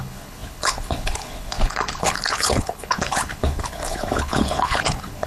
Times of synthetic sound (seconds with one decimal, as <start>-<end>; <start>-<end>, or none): 0.0-5.3